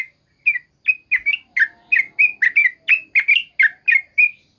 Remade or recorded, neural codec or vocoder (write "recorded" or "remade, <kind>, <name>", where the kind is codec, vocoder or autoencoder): recorded